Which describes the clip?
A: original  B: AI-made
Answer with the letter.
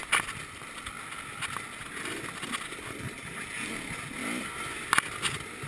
A